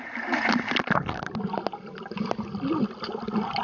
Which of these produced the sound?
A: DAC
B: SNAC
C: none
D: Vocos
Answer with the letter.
C